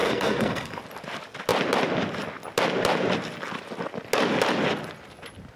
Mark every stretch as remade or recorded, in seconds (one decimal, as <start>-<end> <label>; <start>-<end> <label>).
0.0-0.8 remade; 0.8-5.6 recorded